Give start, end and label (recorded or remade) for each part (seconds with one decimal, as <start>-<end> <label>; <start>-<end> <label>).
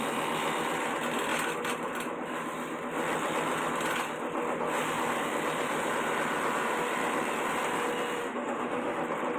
0.0-8.2 recorded; 8.2-9.0 remade; 9.0-9.4 recorded